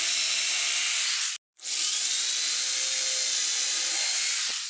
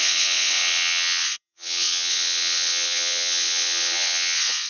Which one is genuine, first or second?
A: first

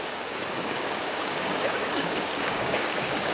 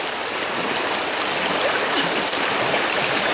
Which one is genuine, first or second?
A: second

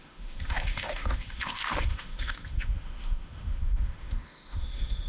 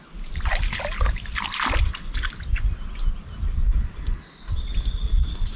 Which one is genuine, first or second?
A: second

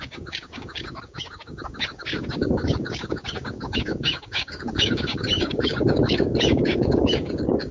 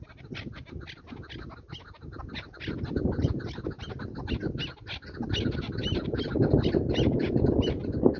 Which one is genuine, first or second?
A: second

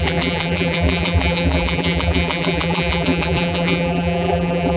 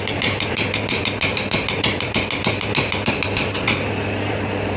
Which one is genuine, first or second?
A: second